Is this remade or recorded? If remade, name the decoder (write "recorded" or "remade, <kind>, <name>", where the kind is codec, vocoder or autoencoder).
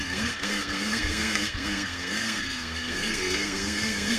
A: remade, codec, SNAC